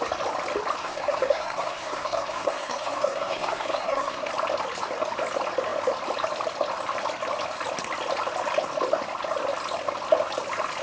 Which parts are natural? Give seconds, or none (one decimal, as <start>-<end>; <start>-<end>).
0.0-0.8; 4.3-10.8